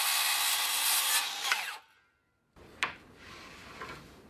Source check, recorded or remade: recorded